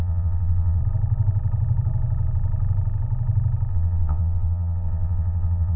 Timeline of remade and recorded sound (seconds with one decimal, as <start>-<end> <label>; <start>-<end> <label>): 0.0-0.8 remade; 0.8-3.7 recorded; 3.7-5.8 remade